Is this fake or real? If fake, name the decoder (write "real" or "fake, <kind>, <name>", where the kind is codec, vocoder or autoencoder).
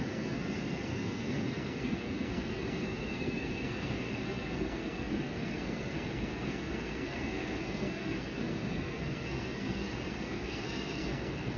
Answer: fake, codec, SNAC